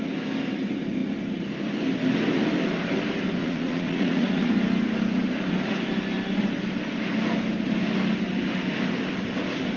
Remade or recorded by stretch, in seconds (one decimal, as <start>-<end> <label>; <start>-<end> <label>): 0.0-3.4 recorded; 3.4-4.5 remade; 4.5-9.8 recorded